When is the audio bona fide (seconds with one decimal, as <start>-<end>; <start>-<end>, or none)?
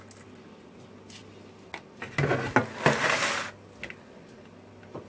0.0-5.1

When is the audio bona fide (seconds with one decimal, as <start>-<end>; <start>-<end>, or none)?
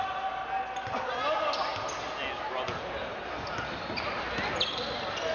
0.0-5.3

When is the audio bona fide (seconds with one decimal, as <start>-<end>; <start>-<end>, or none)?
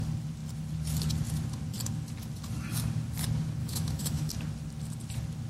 0.0-3.6; 4.3-5.5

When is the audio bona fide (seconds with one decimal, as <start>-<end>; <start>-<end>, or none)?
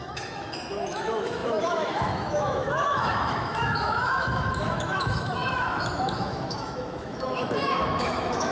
none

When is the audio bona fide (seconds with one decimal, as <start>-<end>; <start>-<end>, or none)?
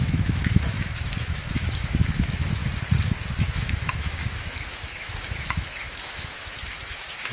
2.6-3.4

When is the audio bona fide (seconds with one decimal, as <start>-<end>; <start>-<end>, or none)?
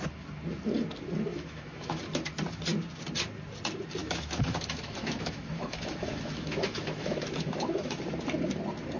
0.0-1.3; 2.0-4.0; 8.0-9.0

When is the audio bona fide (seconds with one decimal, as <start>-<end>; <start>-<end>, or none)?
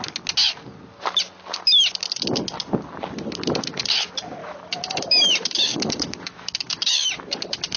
0.0-4.4; 7.2-7.8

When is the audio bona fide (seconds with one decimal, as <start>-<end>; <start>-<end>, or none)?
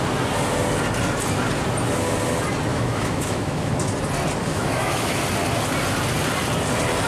0.0-2.7; 3.7-4.5; 5.2-7.1